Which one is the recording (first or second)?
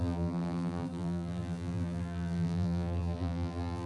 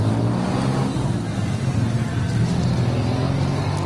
second